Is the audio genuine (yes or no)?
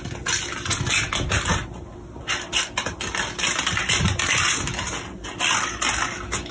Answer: yes